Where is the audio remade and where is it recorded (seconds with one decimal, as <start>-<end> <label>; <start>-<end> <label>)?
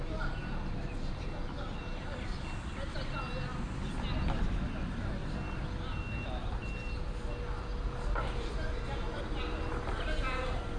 0.0-10.8 recorded